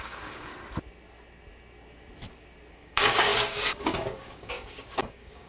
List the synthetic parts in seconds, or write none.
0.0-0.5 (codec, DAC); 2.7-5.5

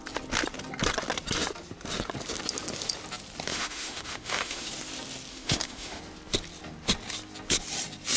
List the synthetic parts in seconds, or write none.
3.5-4.7 (autoencoder, DAC-VAE); 5.3-6.0